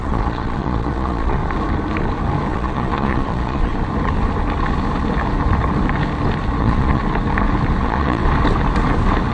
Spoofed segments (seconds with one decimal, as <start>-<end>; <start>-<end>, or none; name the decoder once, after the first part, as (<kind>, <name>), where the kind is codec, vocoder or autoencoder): 0.0-1.4 (vocoder, Vocos); 2.5-3.7; 6.6-7.0; 7.8-8.2